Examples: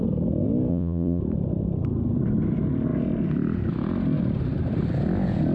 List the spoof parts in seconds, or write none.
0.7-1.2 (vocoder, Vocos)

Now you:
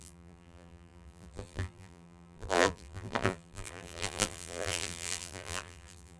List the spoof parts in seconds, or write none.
0.0-6.2 (vocoder, BigVGAN v2)